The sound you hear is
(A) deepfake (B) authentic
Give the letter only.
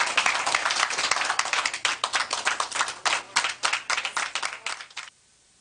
A